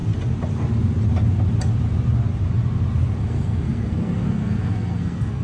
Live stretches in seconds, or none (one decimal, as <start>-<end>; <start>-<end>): 0.0-3.2